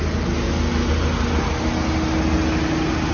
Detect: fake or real real